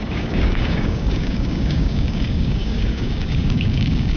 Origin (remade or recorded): remade